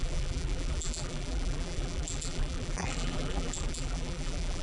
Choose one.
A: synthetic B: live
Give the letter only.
A